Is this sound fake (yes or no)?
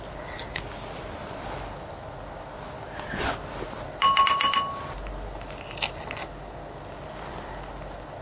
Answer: no